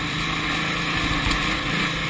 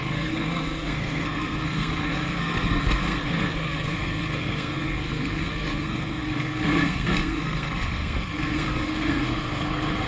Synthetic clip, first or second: second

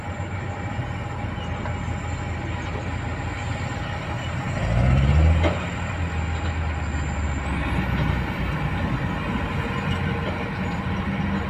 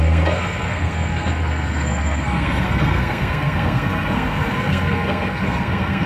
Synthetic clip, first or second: second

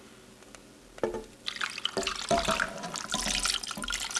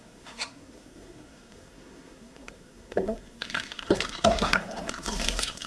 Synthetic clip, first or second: second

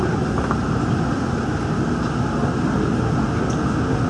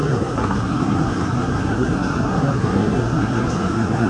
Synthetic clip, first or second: second